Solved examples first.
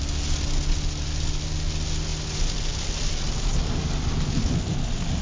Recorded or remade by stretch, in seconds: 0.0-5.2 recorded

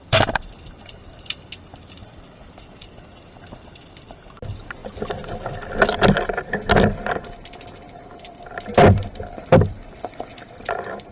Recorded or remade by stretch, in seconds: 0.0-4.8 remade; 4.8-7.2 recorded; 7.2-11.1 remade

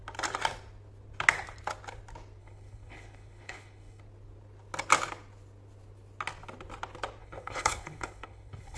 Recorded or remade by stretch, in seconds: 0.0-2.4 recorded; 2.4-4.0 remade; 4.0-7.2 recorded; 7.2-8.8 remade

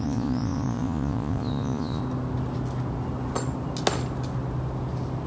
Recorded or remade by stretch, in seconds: 0.0-2.0 remade; 2.0-5.3 recorded

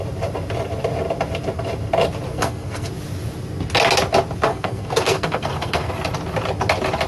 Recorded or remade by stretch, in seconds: 0.0-2.3 recorded; 2.3-2.9 remade; 2.9-4.5 recorded; 4.5-5.9 remade; 5.9-7.1 recorded

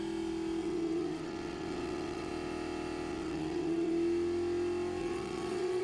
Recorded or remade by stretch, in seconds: 0.0-0.6 recorded; 0.6-2.3 remade; 2.3-3.1 recorded; 3.1-3.9 remade; 3.9-5.0 recorded; 5.0-5.8 remade